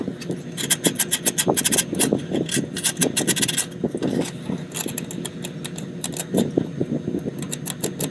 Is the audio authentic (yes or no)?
yes